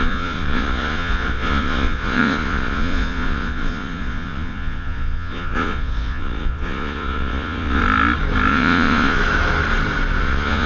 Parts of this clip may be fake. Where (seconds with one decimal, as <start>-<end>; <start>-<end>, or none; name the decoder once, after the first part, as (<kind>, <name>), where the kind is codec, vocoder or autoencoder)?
0.0-7.8 (vocoder, Vocos); 8.5-9.2; 10.2-10.7